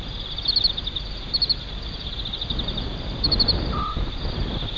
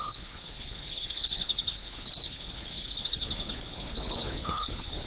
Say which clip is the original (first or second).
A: first